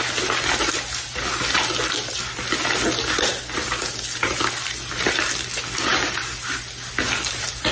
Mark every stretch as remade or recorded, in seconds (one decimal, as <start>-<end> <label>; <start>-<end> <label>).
0.0-7.7 recorded